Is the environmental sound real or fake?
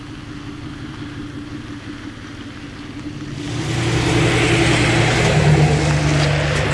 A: real